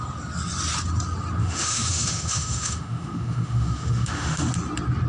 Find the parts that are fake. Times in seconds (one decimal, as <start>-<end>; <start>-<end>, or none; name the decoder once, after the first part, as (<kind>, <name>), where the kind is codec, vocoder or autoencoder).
1.4-4.5 (autoencoder, DAC-VAE)